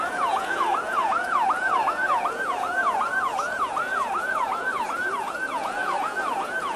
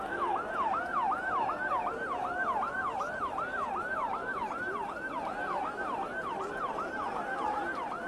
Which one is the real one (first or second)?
second